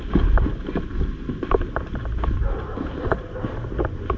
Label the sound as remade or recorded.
recorded